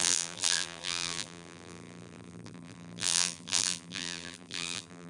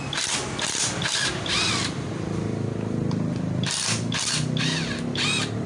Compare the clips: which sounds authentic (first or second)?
second